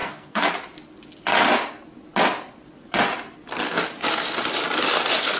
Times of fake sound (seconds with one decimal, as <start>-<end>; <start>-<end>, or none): 0.0-0.5